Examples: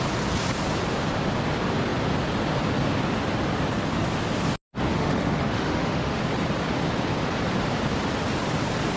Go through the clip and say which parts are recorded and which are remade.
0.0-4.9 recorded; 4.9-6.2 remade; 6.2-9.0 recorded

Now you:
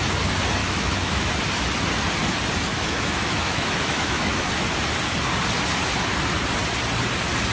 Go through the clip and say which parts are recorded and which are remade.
0.0-0.6 recorded; 0.6-1.3 remade; 1.3-2.7 recorded; 2.7-4.5 remade; 4.5-7.5 recorded

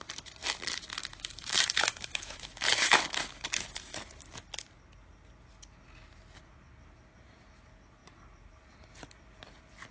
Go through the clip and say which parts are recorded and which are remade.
0.0-1.1 recorded; 1.1-3.4 remade; 3.4-9.9 recorded

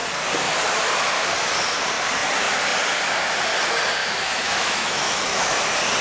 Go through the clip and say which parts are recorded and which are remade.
0.0-4.0 recorded; 4.0-5.6 remade; 5.6-6.0 recorded

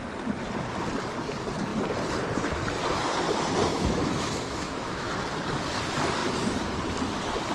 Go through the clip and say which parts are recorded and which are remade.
0.0-3.7 recorded; 3.7-5.1 remade; 5.1-7.5 recorded

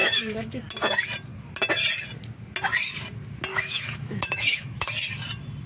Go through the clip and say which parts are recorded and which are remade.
0.0-0.6 remade; 0.6-3.5 recorded; 3.5-4.9 remade; 4.9-5.7 recorded

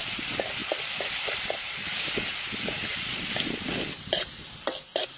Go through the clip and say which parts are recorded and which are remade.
0.0-5.2 recorded

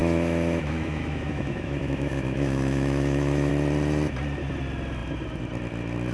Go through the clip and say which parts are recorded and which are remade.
0.0-3.5 remade; 3.5-6.1 recorded